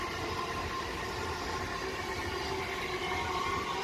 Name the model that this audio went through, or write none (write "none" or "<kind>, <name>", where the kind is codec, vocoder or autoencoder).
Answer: none